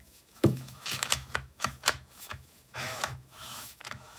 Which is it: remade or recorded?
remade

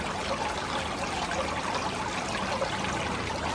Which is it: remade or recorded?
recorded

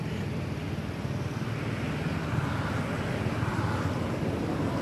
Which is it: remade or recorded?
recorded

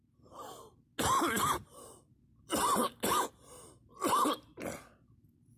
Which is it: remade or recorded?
recorded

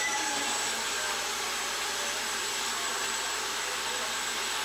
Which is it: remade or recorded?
recorded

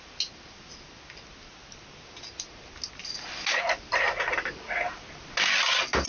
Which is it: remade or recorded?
recorded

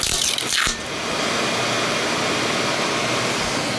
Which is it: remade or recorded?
recorded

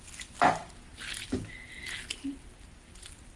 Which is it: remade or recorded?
recorded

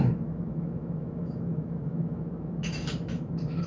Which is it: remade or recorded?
remade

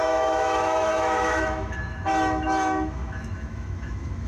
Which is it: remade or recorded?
remade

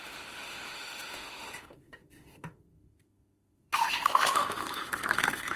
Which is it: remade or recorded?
remade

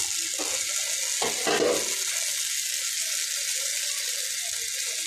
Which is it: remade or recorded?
recorded